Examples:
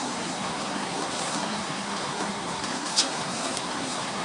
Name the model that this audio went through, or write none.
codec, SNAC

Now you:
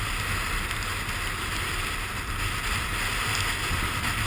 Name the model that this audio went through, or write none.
none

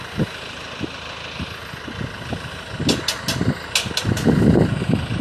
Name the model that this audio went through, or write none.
none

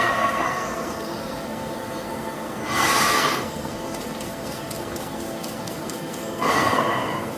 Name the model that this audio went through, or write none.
codec, SNAC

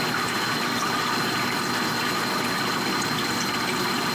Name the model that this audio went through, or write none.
none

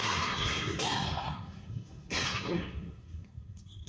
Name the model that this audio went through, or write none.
codec, SNAC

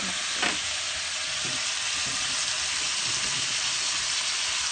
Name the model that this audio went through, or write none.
none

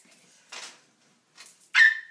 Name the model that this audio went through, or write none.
none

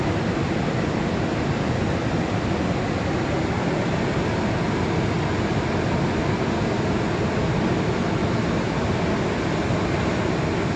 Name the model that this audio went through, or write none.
none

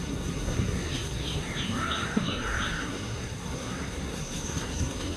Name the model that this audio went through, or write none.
codec, SNAC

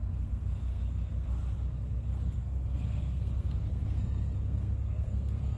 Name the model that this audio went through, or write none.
codec, SNAC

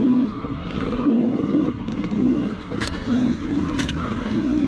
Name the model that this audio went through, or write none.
codec, SNAC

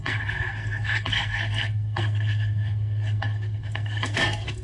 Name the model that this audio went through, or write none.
codec, SNAC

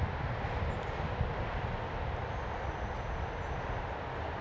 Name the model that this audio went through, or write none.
none